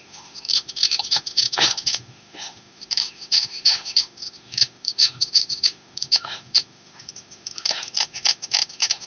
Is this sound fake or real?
fake